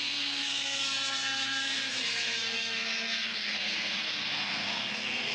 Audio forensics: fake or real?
fake